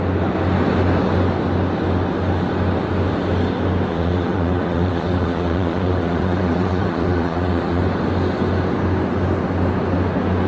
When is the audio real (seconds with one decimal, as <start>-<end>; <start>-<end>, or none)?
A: 0.0-3.9; 7.8-10.5